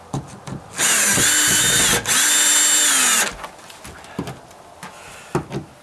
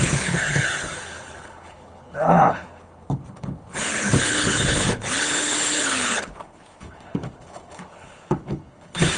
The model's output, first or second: second